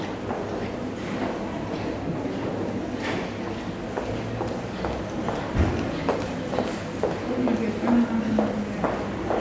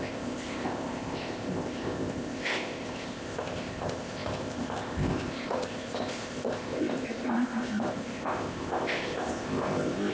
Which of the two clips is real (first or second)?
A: first